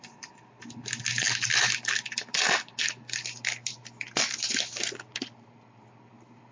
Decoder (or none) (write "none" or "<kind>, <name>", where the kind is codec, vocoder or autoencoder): none